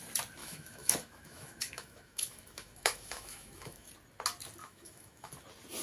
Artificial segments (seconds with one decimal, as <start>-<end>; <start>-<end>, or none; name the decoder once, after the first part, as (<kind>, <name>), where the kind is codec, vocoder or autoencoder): 0.4-3.9 (autoencoder, DAC-VAE); 4.6-5.3